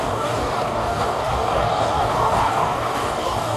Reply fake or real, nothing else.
fake